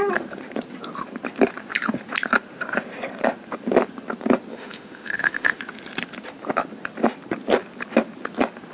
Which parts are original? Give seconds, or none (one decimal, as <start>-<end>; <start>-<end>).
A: 0.0-4.5; 5.6-8.7